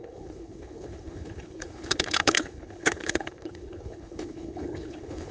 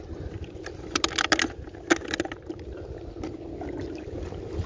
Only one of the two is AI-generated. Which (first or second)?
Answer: first